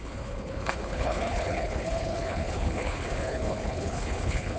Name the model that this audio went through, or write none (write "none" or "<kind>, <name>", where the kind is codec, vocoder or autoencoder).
codec, HILCodec